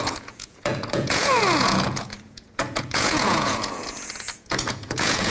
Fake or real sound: fake